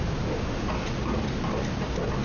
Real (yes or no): yes